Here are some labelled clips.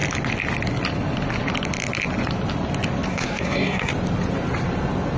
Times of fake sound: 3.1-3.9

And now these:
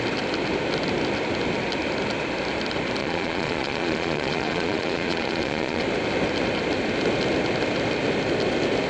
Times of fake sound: 3.0-5.8